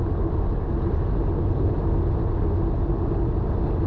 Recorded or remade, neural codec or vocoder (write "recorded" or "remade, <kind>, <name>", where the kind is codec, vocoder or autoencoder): recorded